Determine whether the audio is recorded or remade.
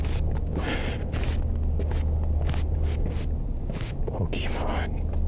recorded